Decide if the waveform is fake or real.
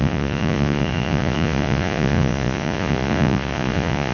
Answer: fake